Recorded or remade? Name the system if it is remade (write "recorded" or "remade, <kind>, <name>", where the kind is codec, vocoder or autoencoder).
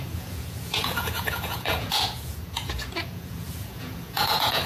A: remade, vocoder, Vocos